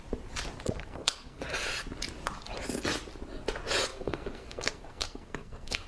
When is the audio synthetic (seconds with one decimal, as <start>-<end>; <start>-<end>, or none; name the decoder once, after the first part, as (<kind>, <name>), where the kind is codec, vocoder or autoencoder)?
0.8-1.4 (codec, SNAC); 3.9-5.9